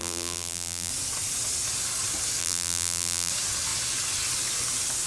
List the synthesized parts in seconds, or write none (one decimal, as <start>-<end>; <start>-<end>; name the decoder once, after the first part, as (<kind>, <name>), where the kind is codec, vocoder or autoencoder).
0.0-0.9 (vocoder, BigVGAN v2); 2.4-3.3